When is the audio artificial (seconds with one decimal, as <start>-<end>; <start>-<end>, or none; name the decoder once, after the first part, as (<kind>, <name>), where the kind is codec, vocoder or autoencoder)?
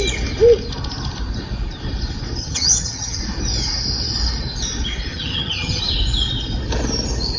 2.4-3.2 (vocoder, HiFi-GAN); 5.1-5.8